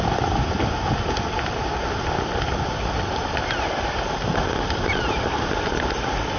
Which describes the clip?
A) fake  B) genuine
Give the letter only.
B